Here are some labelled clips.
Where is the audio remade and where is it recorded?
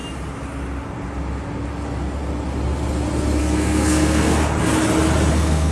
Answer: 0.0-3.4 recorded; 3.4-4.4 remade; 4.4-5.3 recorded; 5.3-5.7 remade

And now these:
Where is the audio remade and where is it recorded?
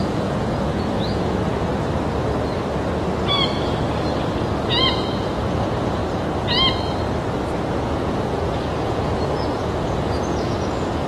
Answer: 0.0-1.7 remade; 1.7-4.8 recorded; 4.8-6.0 remade; 6.0-7.7 recorded; 7.7-11.1 remade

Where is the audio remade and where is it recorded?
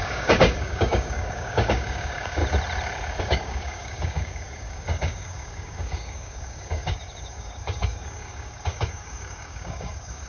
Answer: 0.0-2.4 remade; 2.4-3.2 recorded; 3.2-10.3 remade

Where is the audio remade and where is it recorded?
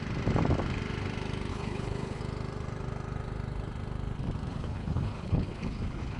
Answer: 0.0-1.5 recorded; 1.5-2.2 remade; 2.2-4.5 recorded; 4.5-6.2 remade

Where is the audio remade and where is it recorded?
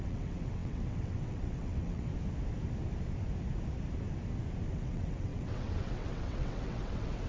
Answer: 0.0-2.1 remade; 2.1-4.7 recorded; 4.7-7.3 remade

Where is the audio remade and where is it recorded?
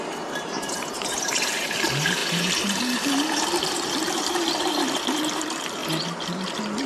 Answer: 0.0-5.8 remade; 5.8-6.9 recorded